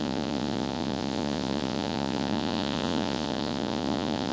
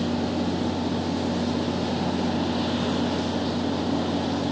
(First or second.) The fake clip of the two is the first